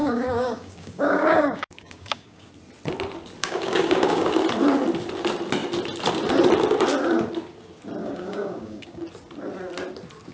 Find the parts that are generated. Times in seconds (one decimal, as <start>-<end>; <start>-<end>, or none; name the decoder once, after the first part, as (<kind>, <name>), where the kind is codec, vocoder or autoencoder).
0.0-2.5 (codec, DAC); 3.4-4.3; 8.0-9.0